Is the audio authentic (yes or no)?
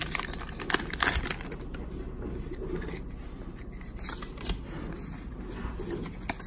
yes